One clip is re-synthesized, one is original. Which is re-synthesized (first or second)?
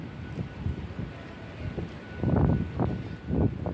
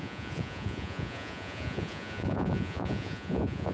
second